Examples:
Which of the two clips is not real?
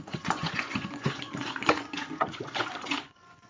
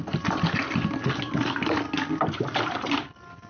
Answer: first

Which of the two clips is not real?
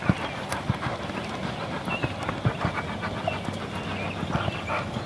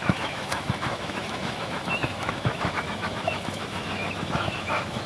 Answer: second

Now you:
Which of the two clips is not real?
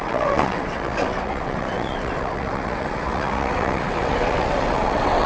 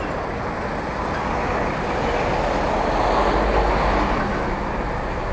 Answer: first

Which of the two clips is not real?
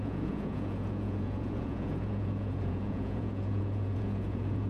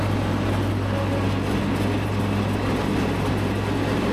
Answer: first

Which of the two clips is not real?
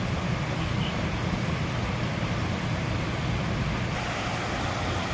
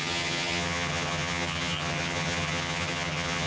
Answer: second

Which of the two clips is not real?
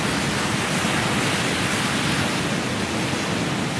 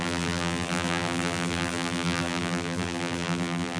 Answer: second